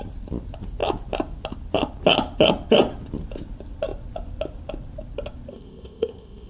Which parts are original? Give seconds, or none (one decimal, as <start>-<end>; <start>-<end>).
0.0-5.5